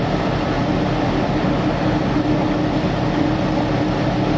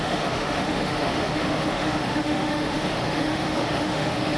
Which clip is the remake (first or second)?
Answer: second